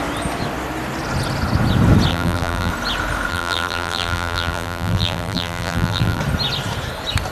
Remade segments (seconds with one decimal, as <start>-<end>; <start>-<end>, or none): 2.1-2.7; 3.3-6.2